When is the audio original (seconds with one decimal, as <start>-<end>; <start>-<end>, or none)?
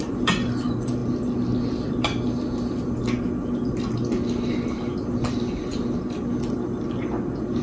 0.0-7.6